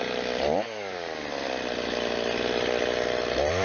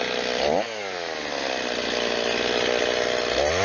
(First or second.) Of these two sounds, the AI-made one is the first